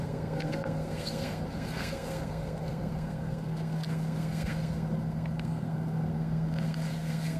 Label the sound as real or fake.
fake